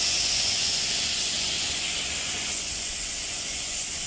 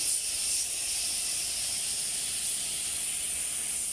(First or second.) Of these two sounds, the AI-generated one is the first